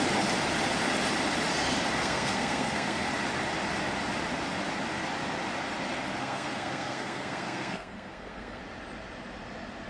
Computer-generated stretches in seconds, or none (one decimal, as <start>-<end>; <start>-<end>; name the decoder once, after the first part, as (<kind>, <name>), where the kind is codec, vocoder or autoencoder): 2.0-3.1 (codec, SNAC); 6.2-8.6

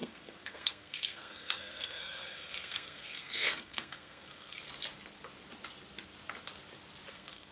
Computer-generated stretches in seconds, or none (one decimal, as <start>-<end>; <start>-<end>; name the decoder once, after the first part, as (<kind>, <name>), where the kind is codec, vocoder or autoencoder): 0.0-4.6 (codec, SNAC); 7.1-7.5

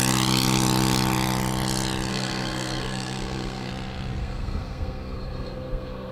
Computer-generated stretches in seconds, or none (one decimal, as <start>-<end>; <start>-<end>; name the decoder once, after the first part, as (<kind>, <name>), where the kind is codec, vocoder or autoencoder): 2.1-3.7 (codec, SNAC); 4.2-6.1

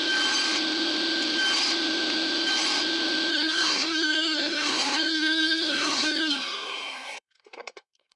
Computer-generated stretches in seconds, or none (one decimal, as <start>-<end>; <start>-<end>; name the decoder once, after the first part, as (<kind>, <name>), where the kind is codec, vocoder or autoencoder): 3.3-8.2 (codec, SNAC)

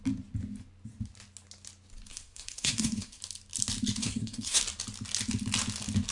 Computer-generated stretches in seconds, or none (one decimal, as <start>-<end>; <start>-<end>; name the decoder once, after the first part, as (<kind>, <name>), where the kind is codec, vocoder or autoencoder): 2.1-3.2 (codec, SNAC); 4.0-4.6

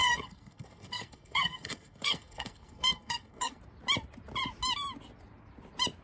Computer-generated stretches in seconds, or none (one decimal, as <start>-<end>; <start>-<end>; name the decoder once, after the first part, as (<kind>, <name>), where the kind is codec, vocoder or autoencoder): 0.0-3.6 (codec, SNAC)

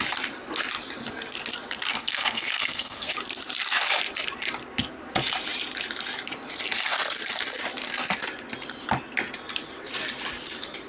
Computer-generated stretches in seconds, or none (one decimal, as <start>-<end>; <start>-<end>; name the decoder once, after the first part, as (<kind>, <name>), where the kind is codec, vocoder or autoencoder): 1.9-3.1 (codec, SNAC)